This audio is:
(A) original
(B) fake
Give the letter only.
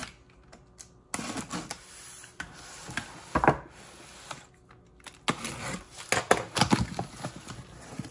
A